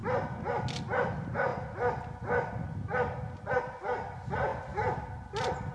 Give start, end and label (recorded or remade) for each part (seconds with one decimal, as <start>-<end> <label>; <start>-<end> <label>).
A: 0.0-5.7 recorded